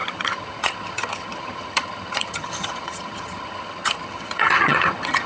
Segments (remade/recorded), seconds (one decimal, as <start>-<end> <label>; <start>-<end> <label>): 0.0-5.3 remade